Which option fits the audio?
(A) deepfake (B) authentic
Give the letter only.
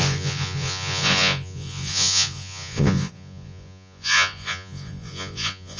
A